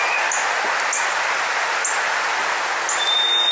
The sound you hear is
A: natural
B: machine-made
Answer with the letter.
A